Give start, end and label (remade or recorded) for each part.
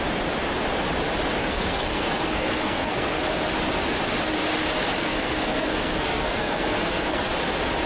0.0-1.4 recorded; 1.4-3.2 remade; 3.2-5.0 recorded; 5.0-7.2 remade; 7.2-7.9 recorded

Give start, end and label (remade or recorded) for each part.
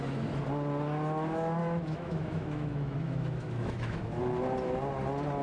0.0-1.6 recorded; 1.6-4.2 remade; 4.2-5.4 recorded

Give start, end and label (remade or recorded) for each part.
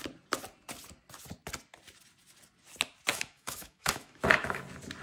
0.0-3.1 recorded; 3.1-4.6 remade; 4.6-5.0 recorded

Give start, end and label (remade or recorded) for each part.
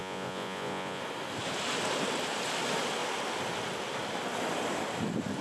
0.0-1.0 remade; 1.0-5.4 recorded